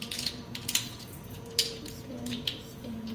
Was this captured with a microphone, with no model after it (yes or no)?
no